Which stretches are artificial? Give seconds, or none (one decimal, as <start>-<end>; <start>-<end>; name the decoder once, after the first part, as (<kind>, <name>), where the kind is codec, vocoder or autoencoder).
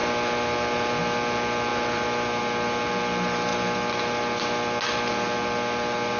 none